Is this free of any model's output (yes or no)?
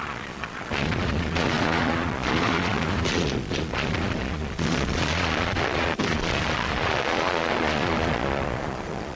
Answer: no